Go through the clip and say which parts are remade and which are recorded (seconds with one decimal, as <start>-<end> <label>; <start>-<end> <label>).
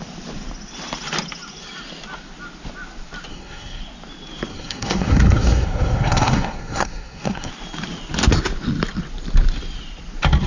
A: 0.0-3.3 recorded; 3.3-3.8 remade; 3.8-4.5 recorded; 4.5-7.5 remade; 7.5-10.5 recorded